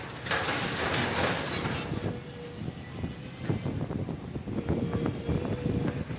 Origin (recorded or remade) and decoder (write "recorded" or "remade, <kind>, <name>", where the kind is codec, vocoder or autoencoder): recorded